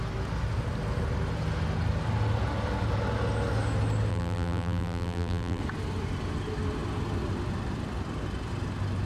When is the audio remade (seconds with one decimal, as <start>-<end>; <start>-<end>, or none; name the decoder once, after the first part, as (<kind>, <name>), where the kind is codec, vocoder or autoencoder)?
4.1-5.6 (vocoder, BigVGAN v2)